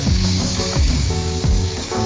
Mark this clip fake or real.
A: fake